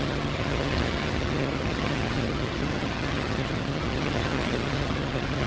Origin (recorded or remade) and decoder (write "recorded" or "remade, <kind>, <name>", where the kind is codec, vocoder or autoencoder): remade, vocoder, HiFi-GAN